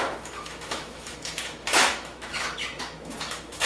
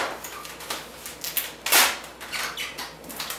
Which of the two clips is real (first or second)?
second